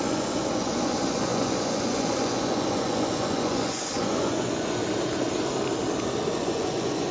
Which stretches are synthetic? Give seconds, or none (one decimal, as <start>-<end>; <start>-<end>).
0.0-4.8; 6.3-7.1